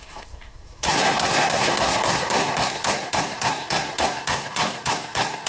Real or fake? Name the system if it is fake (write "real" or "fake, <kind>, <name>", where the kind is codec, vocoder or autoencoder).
fake, codec, SNAC